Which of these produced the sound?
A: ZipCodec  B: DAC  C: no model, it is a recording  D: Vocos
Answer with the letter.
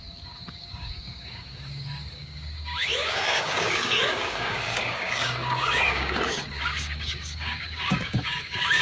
B